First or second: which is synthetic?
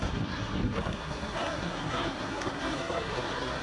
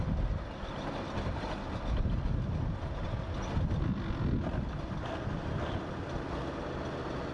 first